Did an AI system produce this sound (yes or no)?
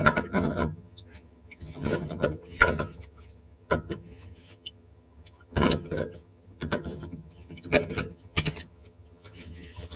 yes